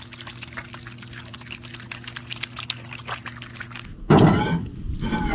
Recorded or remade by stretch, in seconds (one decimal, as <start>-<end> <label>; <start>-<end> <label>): 0.0-5.3 recorded